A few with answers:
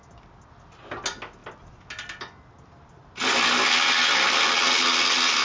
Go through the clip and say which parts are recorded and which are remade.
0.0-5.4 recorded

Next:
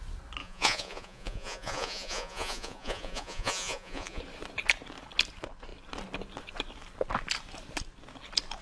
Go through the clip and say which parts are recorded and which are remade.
0.0-0.4 recorded; 0.4-4.2 remade; 4.2-8.6 recorded

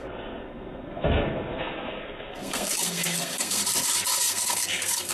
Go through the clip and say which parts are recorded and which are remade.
0.0-3.6 remade; 3.6-4.2 recorded; 4.2-5.1 remade

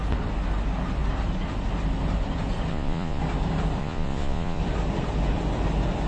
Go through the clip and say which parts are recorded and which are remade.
0.0-2.7 recorded; 2.7-3.2 remade; 3.2-3.8 recorded; 3.8-4.6 remade; 4.6-6.1 recorded

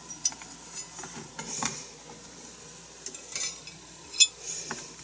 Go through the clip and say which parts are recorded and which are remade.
0.0-5.0 recorded

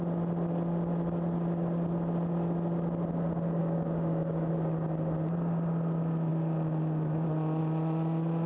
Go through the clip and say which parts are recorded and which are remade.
0.0-3.6 recorded; 3.6-4.5 remade; 4.5-8.5 recorded

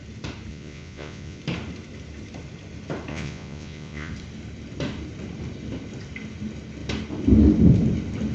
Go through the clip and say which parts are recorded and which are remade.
0.0-0.5 recorded; 0.5-1.4 remade; 1.4-3.1 recorded; 3.1-4.1 remade; 4.1-8.3 recorded